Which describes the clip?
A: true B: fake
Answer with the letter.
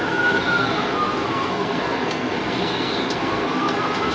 B